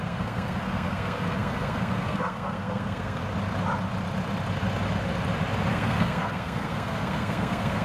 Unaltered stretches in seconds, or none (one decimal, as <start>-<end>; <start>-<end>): 3.2-5.7